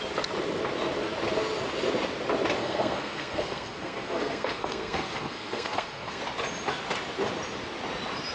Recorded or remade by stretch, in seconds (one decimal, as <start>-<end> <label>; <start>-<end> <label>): 0.0-2.6 recorded; 2.6-6.2 remade; 6.2-8.3 recorded